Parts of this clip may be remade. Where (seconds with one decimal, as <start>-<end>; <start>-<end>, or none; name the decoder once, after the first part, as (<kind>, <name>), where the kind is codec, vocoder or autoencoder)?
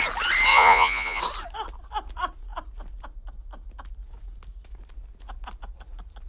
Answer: 0.5-1.2 (vocoder, Vocos)